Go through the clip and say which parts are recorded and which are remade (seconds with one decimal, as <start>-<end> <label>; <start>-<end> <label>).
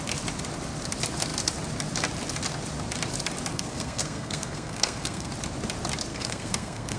0.0-3.5 recorded; 3.5-5.3 remade; 5.3-6.1 recorded; 6.1-7.0 remade